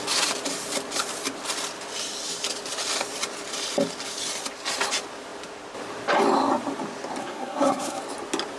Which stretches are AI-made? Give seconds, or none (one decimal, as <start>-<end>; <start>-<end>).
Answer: 7.2-8.0